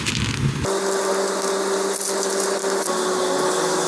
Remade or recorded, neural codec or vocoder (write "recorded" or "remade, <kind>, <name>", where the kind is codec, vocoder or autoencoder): recorded